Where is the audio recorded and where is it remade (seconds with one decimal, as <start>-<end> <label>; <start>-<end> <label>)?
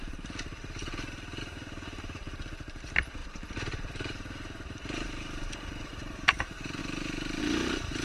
0.0-0.9 remade; 0.9-1.4 recorded; 1.4-6.8 remade; 6.8-7.4 recorded; 7.4-8.0 remade